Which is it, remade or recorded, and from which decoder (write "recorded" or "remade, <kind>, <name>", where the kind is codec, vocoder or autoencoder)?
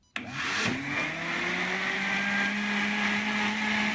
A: recorded